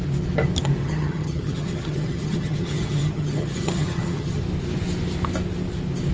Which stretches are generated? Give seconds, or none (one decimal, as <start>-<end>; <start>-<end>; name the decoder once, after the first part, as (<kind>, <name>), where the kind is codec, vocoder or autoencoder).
0.8-4.4 (vocoder, HiFi-GAN)